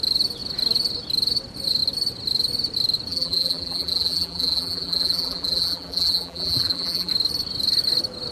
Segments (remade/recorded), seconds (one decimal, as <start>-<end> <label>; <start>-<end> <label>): 0.0-3.1 recorded; 3.1-7.1 remade; 7.1-8.3 recorded